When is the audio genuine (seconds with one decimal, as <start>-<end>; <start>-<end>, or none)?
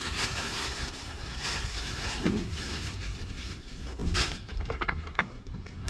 none